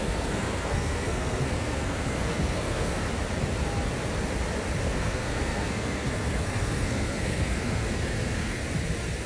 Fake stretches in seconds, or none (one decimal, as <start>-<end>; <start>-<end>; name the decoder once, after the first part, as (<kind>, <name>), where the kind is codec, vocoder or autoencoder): 0.0-3.0 (codec, SNAC); 4.8-8.6